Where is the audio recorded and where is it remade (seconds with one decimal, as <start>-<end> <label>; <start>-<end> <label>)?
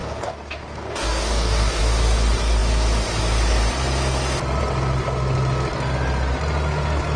0.0-1.8 remade; 1.8-7.2 recorded